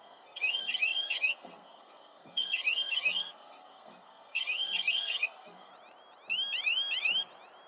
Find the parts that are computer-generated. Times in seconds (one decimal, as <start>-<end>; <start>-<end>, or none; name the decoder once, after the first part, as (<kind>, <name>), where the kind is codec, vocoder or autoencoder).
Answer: 0.0-5.7 (codec, SNAC)